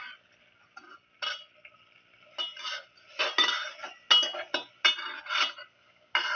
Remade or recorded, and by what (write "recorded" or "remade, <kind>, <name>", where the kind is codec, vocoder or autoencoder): recorded